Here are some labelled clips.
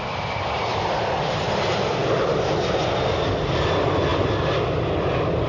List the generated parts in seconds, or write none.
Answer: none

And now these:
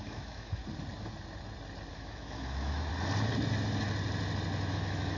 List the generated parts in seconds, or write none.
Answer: 0.0-0.6 (autoencoder, DAC-VAE); 1.9-2.9; 4.7-5.2

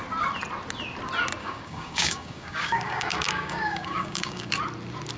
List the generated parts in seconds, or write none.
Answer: 1.4-4.5 (codec, DAC)

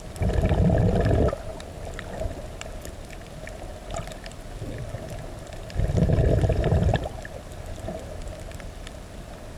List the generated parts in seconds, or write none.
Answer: none

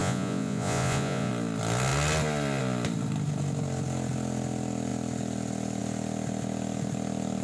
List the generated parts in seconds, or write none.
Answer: 0.0-1.3 (vocoder, Vocos)

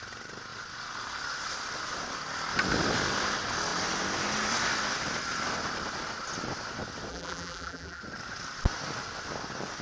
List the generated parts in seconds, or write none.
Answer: 7.1-8.0 (vocoder, BigVGAN v2)

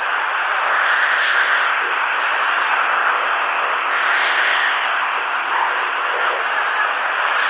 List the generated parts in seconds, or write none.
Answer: 0.6-2.2 (codec, ZipCodec); 2.7-6.4